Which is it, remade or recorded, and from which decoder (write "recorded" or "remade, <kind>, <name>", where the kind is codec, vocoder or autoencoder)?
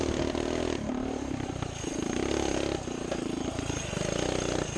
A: recorded